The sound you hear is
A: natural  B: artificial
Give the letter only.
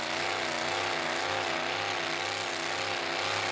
A